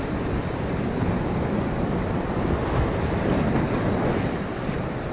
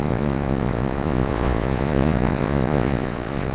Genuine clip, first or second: first